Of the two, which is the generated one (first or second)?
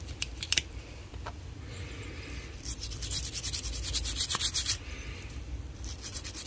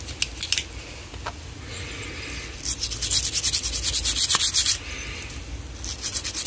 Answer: first